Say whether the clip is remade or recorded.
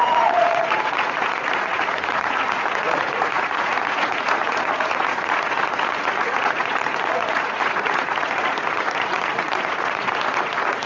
remade